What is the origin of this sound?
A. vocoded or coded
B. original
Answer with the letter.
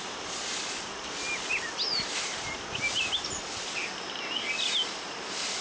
B